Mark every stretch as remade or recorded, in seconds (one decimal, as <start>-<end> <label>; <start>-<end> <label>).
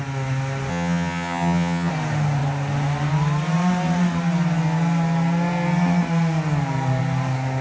0.0-0.7 recorded; 0.7-1.9 remade; 1.9-7.6 recorded